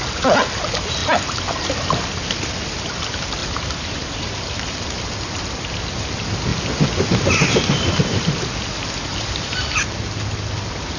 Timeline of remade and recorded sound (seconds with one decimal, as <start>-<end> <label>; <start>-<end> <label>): 0.0-3.4 recorded; 3.4-5.1 remade; 5.1-9.1 recorded; 9.1-10.0 remade; 10.0-11.0 recorded

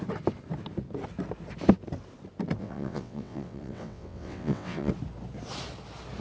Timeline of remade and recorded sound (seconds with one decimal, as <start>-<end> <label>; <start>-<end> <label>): 0.0-2.6 recorded; 2.6-4.9 remade; 4.9-6.2 recorded

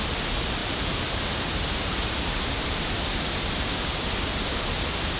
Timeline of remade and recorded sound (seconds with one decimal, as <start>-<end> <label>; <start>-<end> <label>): 0.0-0.6 recorded; 0.6-3.0 remade; 3.0-5.2 recorded

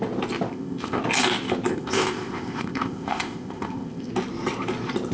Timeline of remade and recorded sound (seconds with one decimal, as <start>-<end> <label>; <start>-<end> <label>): 0.0-0.5 recorded; 0.5-1.0 remade; 1.0-1.7 recorded; 1.7-4.1 remade; 4.1-5.1 recorded

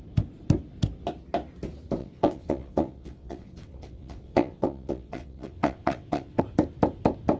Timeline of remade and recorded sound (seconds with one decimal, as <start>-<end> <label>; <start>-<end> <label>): 0.0-2.0 recorded; 2.0-6.4 remade; 6.4-7.4 recorded

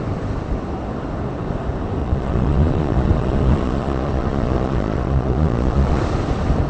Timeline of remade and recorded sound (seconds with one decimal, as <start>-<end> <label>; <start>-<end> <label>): 0.0-2.0 recorded; 2.0-6.0 remade; 6.0-6.7 recorded

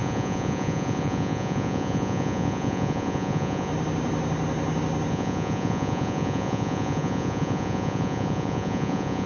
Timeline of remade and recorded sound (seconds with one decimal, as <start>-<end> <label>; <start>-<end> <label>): 0.0-3.7 remade; 3.7-5.1 recorded; 5.1-9.3 remade

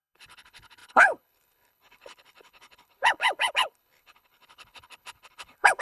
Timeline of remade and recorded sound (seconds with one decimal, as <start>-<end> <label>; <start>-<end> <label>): 0.0-5.8 remade